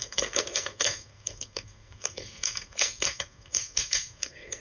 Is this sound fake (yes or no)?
yes